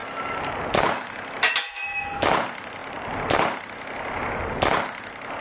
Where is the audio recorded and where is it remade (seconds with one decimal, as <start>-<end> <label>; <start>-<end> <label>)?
0.0-1.5 recorded; 1.5-2.8 remade; 2.8-3.6 recorded; 3.6-5.4 remade